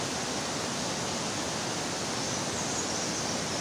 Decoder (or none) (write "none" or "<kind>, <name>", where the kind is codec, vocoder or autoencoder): none